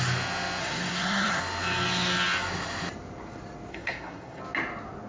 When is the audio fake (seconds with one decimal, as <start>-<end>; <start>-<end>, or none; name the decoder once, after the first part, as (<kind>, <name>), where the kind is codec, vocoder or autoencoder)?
0.6-1.4 (codec, SNAC); 3.7-4.4